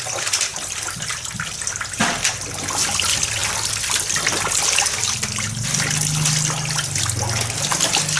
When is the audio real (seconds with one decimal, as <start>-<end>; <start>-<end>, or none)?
0.0-0.5; 1.1-8.2